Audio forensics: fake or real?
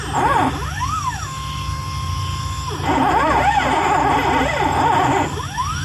real